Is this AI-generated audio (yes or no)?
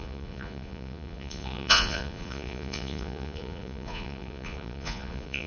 yes